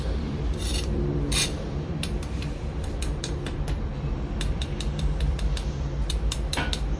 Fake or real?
fake